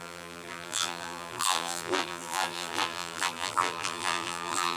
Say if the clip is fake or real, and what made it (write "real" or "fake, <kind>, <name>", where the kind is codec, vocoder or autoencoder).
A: fake, vocoder, BigVGAN v2